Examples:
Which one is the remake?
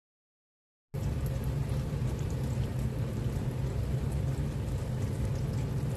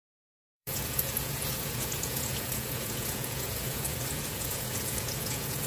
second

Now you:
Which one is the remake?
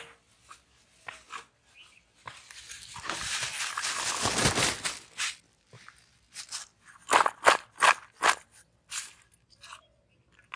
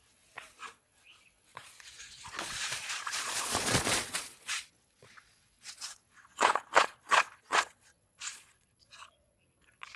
second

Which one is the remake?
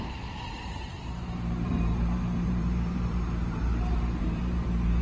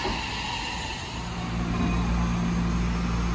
first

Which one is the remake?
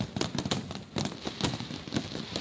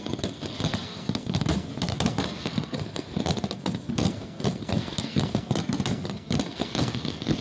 second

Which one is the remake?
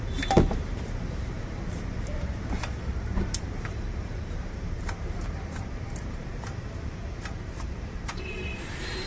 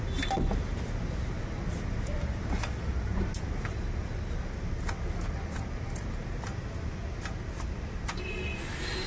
first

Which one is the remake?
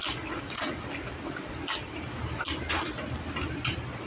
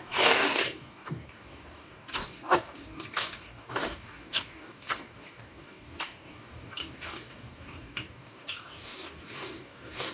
second